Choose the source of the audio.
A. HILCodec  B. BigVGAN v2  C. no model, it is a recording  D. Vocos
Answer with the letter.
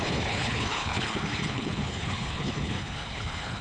A